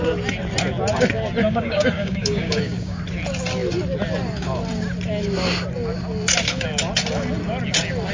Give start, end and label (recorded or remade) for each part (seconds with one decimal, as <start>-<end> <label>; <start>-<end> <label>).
0.0-1.4 recorded; 1.4-3.0 remade; 3.0-8.1 recorded